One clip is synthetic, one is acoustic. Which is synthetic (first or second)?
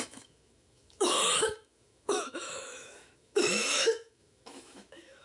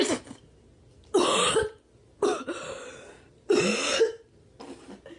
first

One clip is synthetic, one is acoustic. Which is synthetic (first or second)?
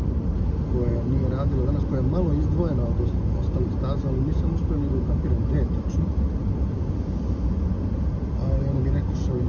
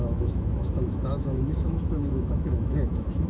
second